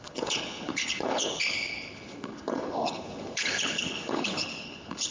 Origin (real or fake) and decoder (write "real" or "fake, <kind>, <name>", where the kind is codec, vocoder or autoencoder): fake, codec, HILCodec